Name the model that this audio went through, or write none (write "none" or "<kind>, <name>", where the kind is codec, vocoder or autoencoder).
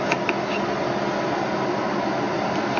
none